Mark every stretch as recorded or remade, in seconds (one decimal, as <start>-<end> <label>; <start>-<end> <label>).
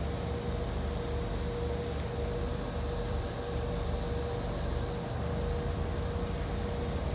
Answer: 0.0-2.5 recorded; 2.5-4.1 remade; 4.1-7.1 recorded